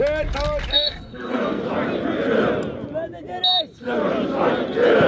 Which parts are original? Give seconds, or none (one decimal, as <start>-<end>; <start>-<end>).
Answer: 0.0-0.7; 1.6-5.1